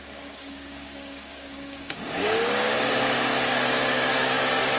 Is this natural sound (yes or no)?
no